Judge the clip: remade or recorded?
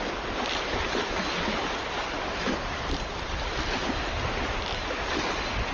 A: recorded